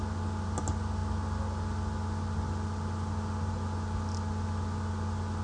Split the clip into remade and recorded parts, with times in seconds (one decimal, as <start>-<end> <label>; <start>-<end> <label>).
0.0-5.4 recorded